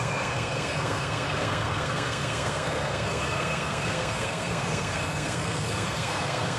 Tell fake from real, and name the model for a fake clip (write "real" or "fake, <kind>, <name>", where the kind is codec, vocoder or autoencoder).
fake, codec, SNAC